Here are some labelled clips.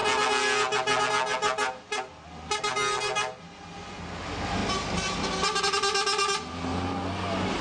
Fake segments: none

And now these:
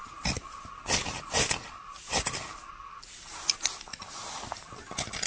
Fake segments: none